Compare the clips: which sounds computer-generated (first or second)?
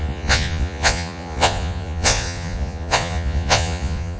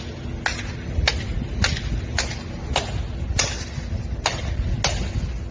first